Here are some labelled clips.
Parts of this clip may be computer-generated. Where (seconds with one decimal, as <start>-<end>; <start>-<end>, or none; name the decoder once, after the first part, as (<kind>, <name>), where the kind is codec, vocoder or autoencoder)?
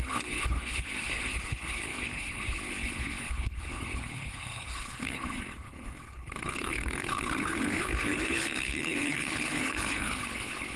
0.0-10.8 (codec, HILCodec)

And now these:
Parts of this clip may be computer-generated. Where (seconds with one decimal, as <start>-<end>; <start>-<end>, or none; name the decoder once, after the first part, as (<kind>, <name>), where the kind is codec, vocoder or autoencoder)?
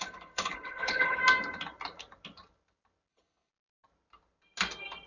0.0-1.2 (codec, HILCodec); 3.1-3.5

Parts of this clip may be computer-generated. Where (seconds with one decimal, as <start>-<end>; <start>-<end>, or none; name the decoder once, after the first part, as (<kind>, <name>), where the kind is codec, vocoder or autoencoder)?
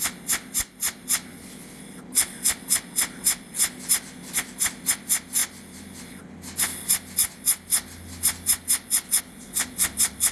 none